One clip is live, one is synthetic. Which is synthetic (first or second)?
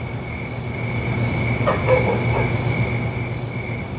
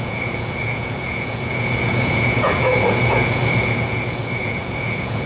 second